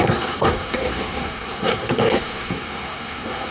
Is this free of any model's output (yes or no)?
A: no